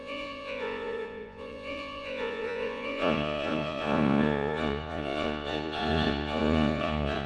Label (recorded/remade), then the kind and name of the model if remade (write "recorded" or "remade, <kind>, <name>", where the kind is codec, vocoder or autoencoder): remade, vocoder, Vocos